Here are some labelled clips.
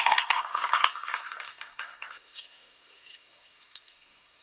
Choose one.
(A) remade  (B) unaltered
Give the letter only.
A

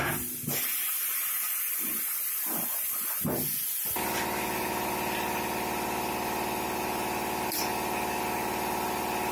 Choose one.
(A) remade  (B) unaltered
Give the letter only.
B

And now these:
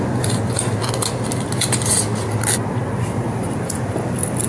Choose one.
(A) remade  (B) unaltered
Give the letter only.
B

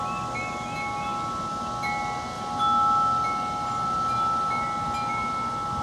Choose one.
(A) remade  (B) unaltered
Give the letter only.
B